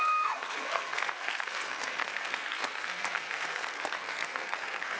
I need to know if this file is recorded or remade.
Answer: remade